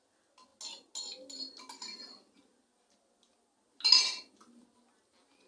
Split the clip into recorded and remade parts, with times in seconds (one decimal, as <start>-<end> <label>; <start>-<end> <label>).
0.0-5.5 recorded